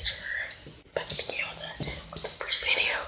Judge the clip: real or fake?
real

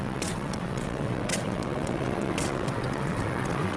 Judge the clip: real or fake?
fake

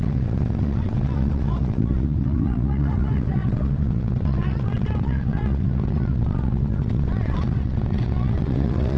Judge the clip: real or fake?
fake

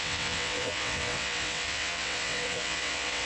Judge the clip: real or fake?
fake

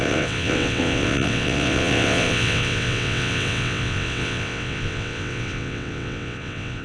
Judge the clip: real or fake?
fake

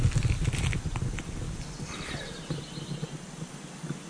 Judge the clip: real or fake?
real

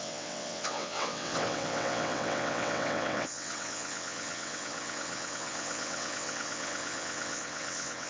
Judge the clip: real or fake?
fake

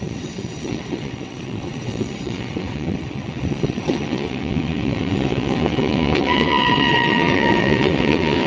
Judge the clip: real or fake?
fake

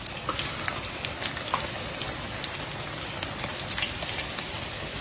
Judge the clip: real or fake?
real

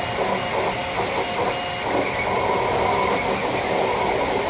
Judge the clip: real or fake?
real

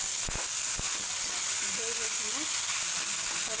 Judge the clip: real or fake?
real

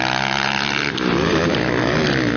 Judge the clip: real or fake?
real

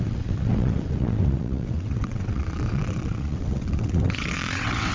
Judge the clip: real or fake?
fake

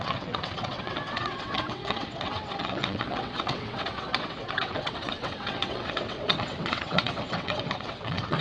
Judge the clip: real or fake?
fake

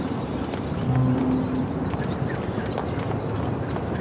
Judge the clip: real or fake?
real